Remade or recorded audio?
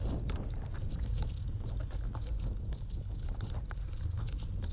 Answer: recorded